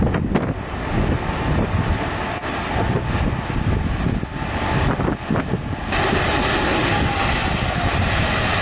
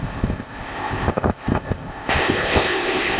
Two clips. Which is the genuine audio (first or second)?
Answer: first